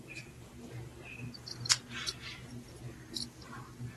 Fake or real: real